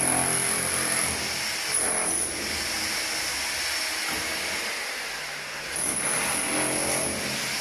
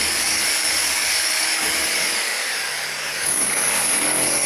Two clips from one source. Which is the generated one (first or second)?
second